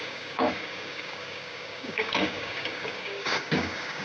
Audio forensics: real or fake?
fake